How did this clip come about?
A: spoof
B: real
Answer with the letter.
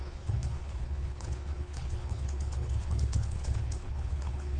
A